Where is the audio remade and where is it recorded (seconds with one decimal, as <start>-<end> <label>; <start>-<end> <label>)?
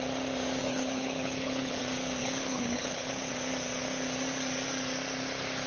0.0-0.6 recorded; 0.6-1.8 remade; 1.8-2.2 recorded; 2.2-3.3 remade; 3.3-5.7 recorded